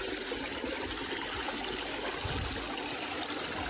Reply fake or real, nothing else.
real